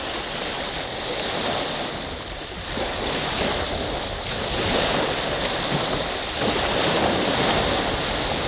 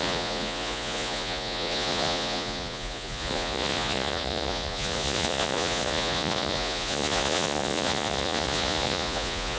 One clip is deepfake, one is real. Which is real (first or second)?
first